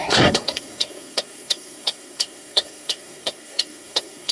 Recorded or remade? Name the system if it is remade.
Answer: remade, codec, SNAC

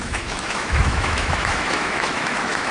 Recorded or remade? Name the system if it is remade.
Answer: remade, autoencoder, DAC-VAE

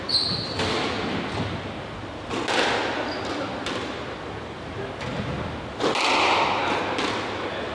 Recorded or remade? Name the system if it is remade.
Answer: recorded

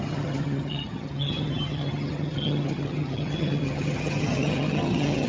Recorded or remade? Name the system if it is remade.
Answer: remade, vocoder, HiFi-GAN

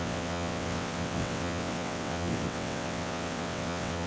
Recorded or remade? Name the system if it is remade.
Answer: remade, vocoder, WaveNeXt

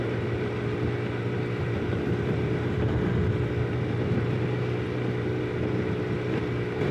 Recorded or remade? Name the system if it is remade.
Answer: recorded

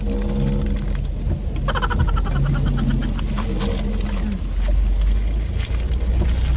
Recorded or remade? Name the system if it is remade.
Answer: recorded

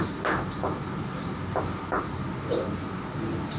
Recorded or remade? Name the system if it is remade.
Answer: recorded